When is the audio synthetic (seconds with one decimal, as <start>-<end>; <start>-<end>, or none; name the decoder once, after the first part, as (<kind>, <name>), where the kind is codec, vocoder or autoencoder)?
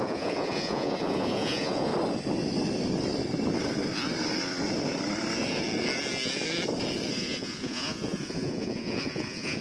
0.0-1.9 (vocoder, Vocos); 7.1-9.6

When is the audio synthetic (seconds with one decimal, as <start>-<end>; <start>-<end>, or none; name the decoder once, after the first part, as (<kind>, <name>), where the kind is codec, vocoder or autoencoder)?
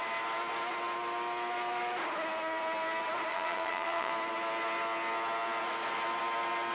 3.3-4.1 (vocoder, Vocos)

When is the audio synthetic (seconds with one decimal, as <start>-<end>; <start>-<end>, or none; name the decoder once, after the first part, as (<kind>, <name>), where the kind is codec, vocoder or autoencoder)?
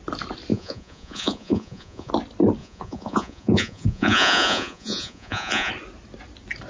0.5-2.1 (vocoder, Vocos); 2.6-5.7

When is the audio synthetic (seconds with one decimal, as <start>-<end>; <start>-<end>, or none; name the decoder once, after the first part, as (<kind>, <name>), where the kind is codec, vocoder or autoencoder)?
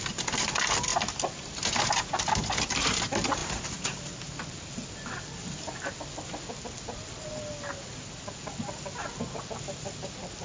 none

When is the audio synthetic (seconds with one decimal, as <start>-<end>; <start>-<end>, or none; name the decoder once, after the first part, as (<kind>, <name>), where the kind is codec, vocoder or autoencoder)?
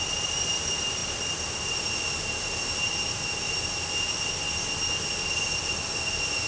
none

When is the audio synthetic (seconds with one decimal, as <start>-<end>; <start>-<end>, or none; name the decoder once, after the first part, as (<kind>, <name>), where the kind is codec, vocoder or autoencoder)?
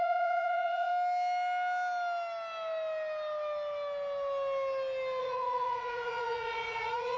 0.0-0.9 (vocoder, Vocos); 5.2-7.2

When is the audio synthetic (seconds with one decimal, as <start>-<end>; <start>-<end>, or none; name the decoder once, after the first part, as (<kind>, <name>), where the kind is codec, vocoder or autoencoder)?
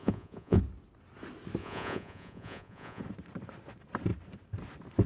0.0-0.6 (vocoder, Vocos); 1.6-3.0